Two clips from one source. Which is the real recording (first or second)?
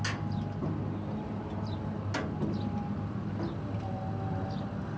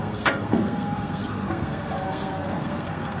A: first